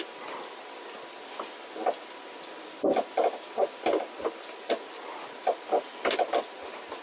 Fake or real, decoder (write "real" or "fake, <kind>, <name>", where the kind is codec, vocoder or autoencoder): real